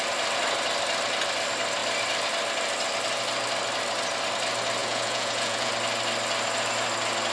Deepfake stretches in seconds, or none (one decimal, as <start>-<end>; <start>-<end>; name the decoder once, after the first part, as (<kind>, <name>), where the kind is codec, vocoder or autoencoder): 4.8-5.7 (vocoder, Vocos)

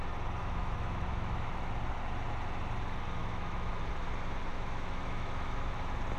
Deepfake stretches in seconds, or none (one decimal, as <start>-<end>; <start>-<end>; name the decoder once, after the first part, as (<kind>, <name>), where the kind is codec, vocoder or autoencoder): 0.4-1.7 (autoencoder, DAC-VAE); 3.2-3.7; 4.5-5.8

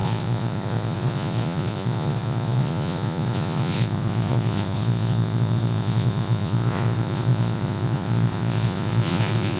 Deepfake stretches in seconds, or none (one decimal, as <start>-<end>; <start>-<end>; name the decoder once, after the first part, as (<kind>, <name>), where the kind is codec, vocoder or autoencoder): 0.0-9.6 (vocoder, Vocos)